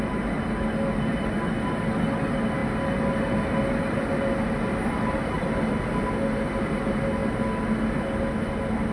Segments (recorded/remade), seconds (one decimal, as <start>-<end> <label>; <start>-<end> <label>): 0.0-8.9 recorded